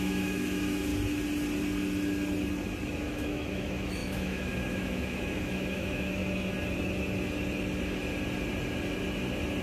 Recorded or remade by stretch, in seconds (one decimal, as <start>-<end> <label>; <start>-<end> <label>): 0.0-0.9 remade; 0.9-3.0 recorded; 3.0-6.2 remade; 6.2-9.6 recorded